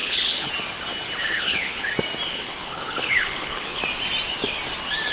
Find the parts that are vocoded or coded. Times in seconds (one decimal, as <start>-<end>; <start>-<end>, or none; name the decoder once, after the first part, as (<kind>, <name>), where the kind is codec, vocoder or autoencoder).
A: 0.0-0.5 (codec, HILCodec); 1.2-1.9; 2.3-3.8